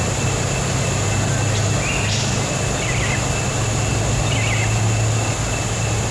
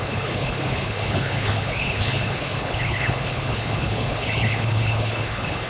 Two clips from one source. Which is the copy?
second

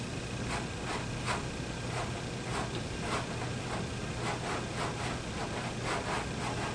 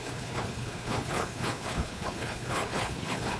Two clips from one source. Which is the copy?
second